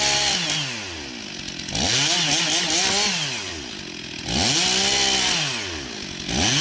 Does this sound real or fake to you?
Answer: real